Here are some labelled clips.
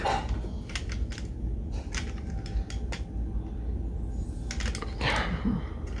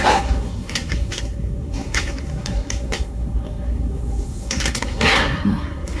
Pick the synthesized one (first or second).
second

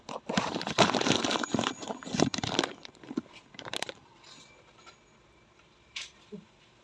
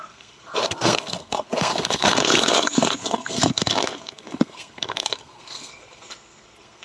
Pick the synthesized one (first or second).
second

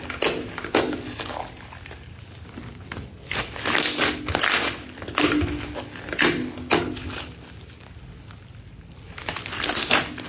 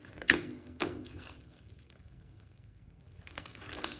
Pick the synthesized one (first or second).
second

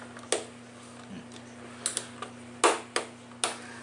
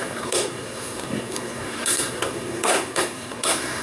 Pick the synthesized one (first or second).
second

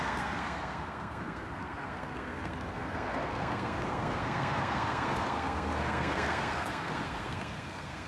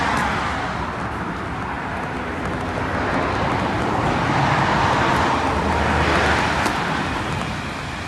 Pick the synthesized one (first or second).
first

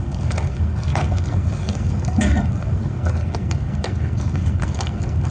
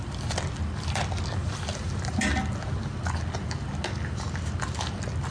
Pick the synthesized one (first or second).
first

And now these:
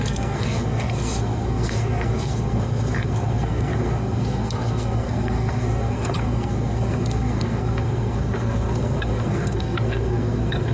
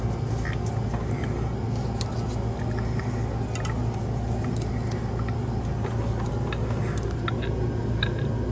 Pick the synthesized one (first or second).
first